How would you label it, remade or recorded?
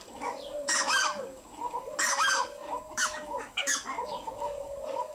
remade